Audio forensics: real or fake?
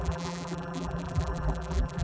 fake